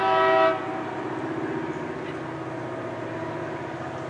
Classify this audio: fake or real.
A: real